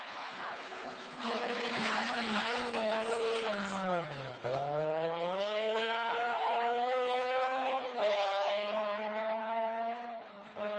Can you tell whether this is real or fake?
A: fake